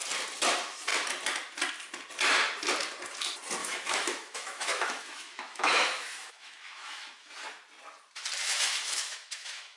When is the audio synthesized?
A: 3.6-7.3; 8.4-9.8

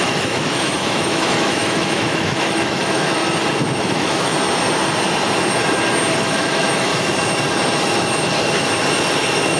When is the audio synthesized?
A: 0.0-3.2; 3.8-4.3; 6.2-6.9

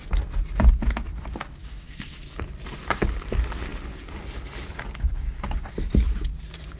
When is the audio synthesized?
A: 1.6-2.4

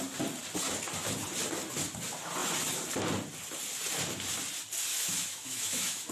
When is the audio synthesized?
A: 4.9-6.1